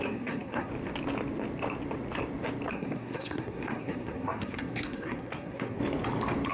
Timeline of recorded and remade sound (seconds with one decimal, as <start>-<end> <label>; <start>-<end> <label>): 0.0-0.7 remade; 0.7-2.7 recorded; 2.7-5.8 remade; 5.8-6.5 recorded